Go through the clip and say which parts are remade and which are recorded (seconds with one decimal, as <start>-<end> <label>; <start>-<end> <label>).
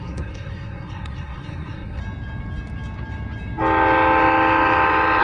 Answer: 0.0-2.0 remade; 2.0-5.2 recorded